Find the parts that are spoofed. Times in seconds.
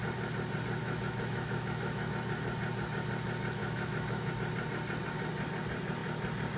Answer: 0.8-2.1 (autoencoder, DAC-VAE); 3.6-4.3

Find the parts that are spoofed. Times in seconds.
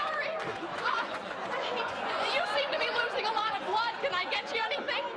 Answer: 0.5-3.6 (vocoder, Vocos); 4.2-4.8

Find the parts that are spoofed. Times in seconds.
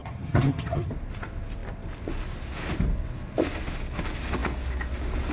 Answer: 0.0-0.9 (vocoder, HiFi-GAN)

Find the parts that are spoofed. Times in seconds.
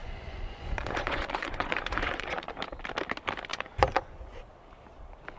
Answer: 0.0-2.5 (vocoder, Vocos); 3.5-4.4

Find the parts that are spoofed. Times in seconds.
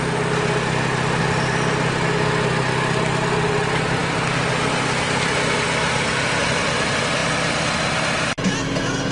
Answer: none